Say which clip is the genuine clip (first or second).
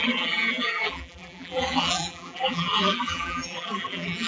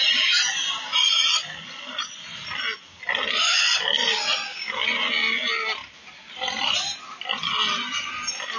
second